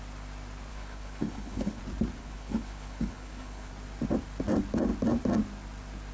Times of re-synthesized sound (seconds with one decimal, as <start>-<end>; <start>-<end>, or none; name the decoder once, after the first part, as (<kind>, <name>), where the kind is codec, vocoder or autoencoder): 0.7-1.8 (codec, HILCodec); 2.2-3.7